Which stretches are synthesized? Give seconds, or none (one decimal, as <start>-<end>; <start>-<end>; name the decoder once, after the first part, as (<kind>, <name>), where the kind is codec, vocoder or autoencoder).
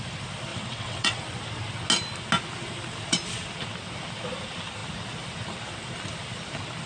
0.5-1.2 (vocoder, WaveNeXt)